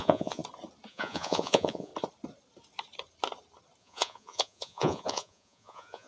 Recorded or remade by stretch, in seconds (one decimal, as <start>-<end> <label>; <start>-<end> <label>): 0.0-0.4 remade; 0.4-0.9 recorded; 0.9-1.9 remade; 1.9-3.8 recorded; 3.8-6.1 remade

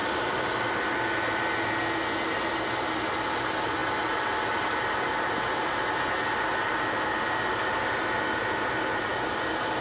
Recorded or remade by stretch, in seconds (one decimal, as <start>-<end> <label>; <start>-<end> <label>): 0.0-9.8 recorded